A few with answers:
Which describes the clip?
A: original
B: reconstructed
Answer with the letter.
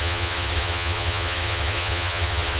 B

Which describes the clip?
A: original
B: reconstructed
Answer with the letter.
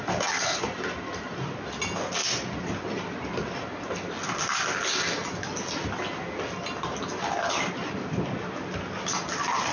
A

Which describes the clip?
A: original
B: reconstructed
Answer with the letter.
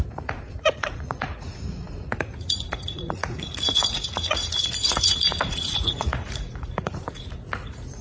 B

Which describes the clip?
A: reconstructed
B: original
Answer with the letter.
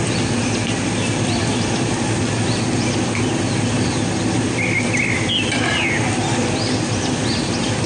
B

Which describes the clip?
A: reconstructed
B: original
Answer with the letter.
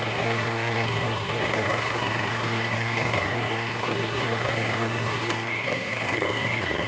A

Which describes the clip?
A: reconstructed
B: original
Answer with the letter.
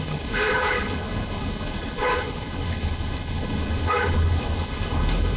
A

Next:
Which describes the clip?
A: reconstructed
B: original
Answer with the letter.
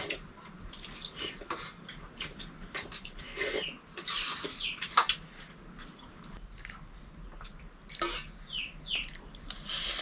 B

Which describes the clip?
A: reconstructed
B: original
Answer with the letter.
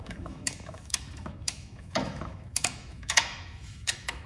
A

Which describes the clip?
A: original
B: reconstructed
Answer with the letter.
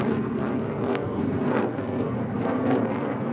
B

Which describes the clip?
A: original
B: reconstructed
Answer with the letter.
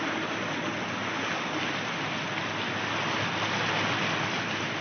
A